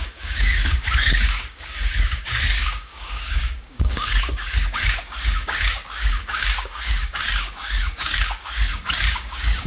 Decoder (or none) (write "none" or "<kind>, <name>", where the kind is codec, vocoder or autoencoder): codec, DAC